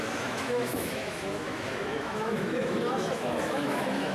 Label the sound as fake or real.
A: fake